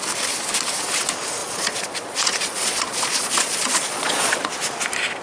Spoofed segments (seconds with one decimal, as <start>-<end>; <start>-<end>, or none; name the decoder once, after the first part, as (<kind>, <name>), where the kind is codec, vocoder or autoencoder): 1.4-4.5 (vocoder, Vocos)